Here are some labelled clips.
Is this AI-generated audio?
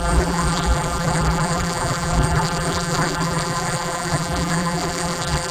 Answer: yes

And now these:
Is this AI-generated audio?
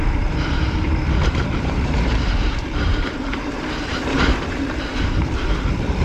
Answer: yes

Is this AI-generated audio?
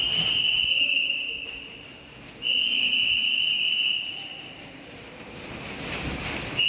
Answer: no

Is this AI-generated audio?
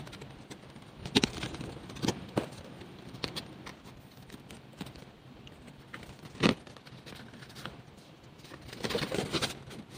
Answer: no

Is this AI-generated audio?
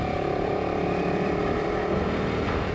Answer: yes